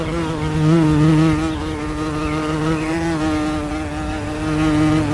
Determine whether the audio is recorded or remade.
recorded